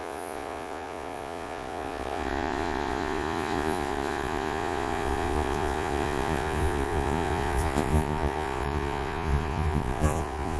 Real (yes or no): no